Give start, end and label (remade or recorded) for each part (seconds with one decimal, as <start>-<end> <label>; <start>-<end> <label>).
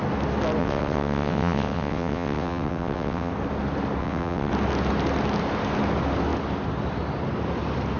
0.0-0.6 recorded; 0.6-3.3 remade; 3.3-4.0 recorded; 4.0-4.5 remade; 4.5-8.0 recorded